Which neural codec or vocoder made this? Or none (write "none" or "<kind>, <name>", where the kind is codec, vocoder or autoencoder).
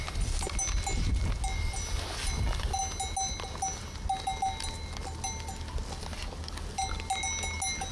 none